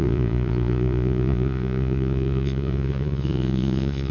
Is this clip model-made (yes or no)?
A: yes